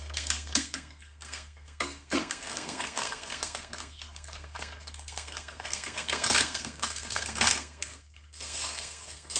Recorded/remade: remade